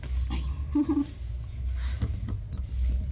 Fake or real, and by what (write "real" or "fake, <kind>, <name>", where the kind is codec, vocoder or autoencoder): real